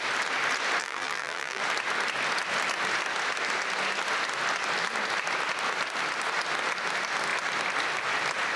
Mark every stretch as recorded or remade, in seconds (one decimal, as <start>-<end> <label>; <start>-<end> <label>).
0.0-0.8 recorded; 0.8-1.6 remade; 1.6-8.6 recorded